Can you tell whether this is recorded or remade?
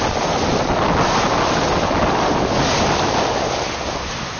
recorded